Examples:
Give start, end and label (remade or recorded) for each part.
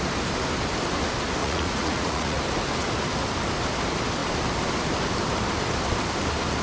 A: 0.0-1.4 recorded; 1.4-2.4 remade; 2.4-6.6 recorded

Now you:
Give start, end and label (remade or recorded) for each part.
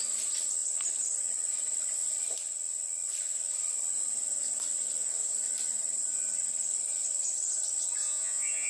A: 0.0-8.0 recorded; 8.0-8.7 remade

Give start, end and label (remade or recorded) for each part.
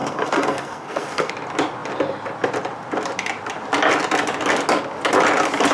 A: 0.0-1.3 remade; 1.3-5.7 recorded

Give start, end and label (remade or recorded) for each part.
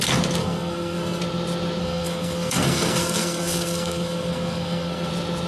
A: 0.0-0.4 recorded; 0.4-1.2 remade; 1.2-1.8 recorded; 1.8-5.1 remade; 5.1-5.5 recorded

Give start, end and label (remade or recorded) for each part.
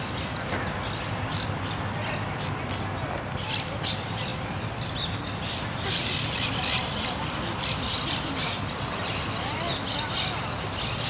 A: 0.0-11.1 recorded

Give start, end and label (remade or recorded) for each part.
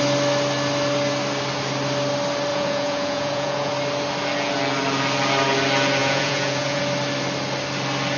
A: 0.0-2.5 recorded; 2.5-3.7 remade; 3.7-6.0 recorded; 6.0-6.8 remade; 6.8-8.2 recorded